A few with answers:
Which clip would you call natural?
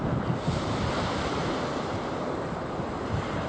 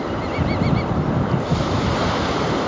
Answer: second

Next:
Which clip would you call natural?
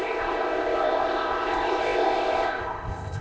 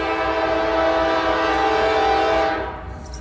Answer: second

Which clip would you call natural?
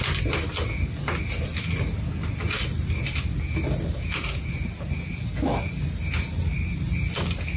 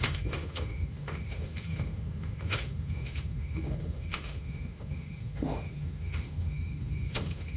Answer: first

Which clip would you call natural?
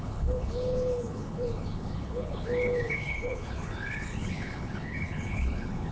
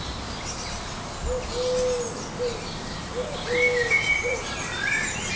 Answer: second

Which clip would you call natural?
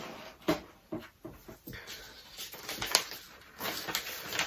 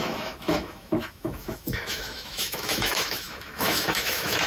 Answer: first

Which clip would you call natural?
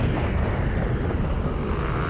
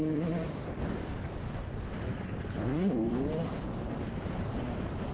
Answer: first